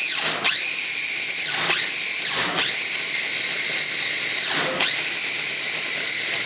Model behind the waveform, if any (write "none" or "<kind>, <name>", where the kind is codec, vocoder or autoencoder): none